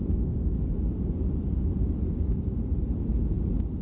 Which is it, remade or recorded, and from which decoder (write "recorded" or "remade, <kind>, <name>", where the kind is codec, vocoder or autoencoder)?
remade, vocoder, BigVGAN v2